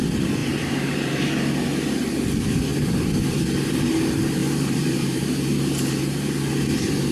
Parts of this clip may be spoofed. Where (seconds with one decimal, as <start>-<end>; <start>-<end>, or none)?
0.4-1.3; 4.4-6.0